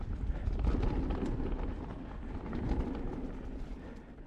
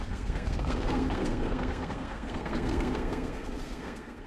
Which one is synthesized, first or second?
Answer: second